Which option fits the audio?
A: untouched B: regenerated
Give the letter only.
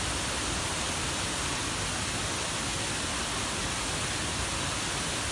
A